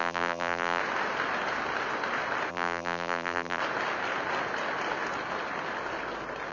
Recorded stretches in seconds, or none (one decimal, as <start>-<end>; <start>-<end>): 0.8-2.5; 3.6-6.5